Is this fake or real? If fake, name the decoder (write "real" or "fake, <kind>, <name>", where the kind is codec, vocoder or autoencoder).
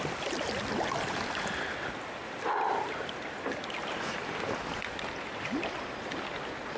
fake, vocoder, BigVGAN v2